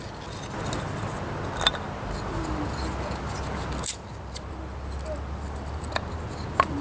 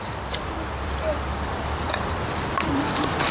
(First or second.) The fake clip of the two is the second